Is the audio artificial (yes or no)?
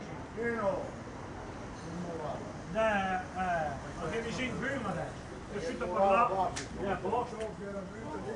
no